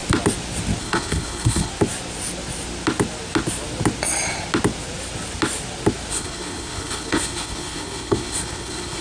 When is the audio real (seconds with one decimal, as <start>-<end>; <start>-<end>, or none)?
0.0-0.8; 1.7-6.1